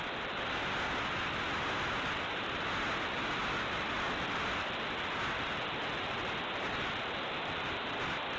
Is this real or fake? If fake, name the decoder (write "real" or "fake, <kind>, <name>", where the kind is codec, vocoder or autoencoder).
real